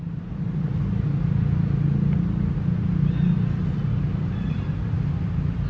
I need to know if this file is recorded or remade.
recorded